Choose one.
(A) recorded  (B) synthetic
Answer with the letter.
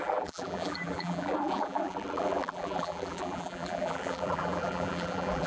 B